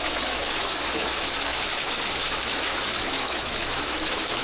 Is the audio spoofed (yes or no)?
yes